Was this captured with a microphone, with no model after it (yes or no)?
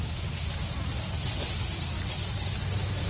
yes